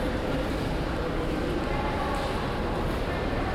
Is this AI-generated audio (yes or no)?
no